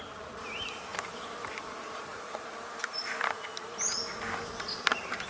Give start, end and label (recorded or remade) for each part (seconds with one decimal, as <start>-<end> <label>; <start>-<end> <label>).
0.0-5.3 recorded